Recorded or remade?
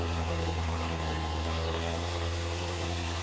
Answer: remade